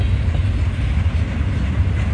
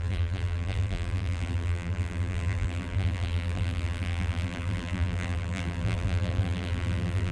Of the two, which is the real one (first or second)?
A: first